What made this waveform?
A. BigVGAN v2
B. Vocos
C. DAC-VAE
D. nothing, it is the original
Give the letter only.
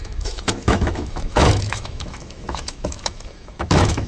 C